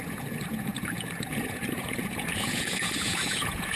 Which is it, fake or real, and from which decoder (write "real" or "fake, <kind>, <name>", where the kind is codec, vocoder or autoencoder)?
fake, vocoder, Vocos